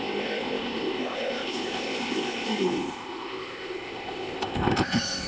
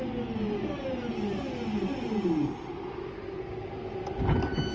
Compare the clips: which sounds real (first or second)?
second